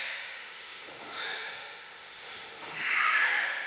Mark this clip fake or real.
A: fake